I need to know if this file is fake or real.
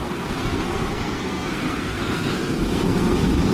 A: fake